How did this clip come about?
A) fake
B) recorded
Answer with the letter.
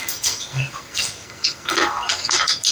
A